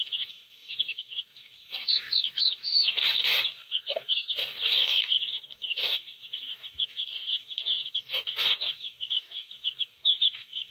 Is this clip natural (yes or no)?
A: no